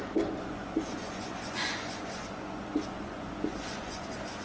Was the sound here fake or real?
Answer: fake